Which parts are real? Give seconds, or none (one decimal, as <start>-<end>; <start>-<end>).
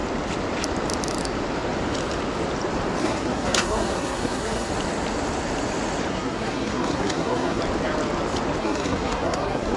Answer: 0.0-3.0; 4.7-6.1; 7.6-8.6